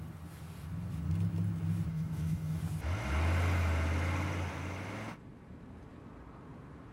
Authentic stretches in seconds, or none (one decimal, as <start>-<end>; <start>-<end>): 0.0-1.9; 2.6-6.9